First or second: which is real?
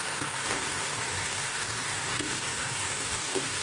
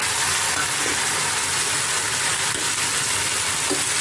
second